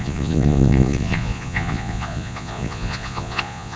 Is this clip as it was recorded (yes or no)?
no